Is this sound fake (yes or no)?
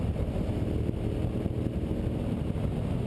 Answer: yes